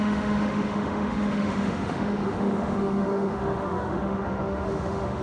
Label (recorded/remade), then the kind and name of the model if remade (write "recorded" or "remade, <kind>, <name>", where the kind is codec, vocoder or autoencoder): remade, autoencoder, DAC-VAE